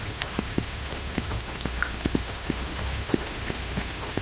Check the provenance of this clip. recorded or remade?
remade